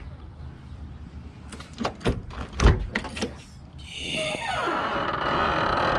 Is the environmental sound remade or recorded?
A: recorded